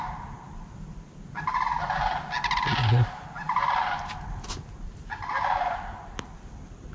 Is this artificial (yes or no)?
no